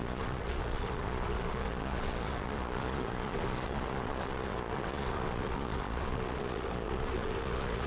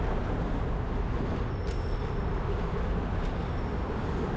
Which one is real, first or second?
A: second